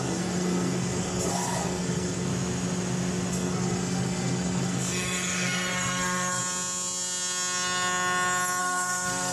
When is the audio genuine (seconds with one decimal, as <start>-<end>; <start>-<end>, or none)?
2.3-3.3; 6.4-8.6